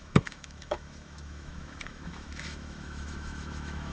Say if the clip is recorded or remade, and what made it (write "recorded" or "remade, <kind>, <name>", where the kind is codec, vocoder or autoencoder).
remade, autoencoder, DAC-VAE